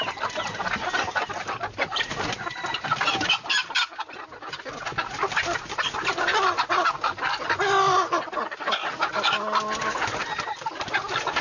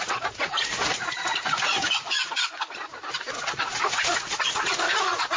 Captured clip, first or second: first